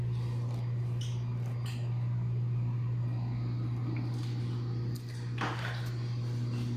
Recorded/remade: recorded